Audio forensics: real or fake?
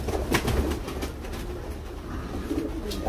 real